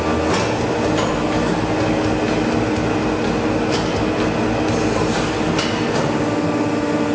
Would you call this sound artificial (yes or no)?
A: no